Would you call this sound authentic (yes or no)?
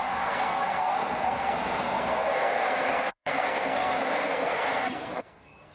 no